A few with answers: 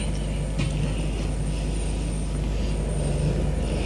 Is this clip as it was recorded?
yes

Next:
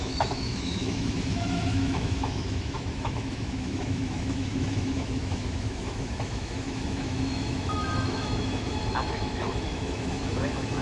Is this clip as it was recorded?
no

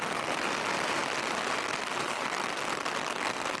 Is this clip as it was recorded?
yes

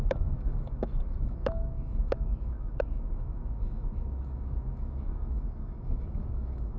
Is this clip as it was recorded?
no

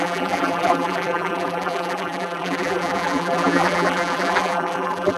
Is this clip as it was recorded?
no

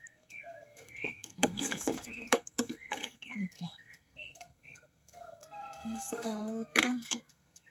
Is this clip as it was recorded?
no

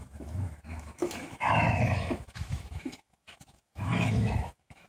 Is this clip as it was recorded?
no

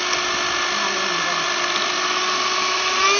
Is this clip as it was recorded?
yes